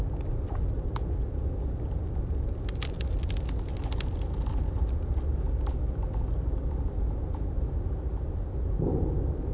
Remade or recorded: recorded